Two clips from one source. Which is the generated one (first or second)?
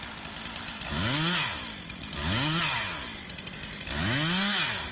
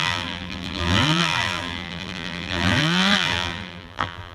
second